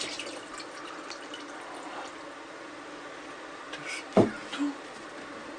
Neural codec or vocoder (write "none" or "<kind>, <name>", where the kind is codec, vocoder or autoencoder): none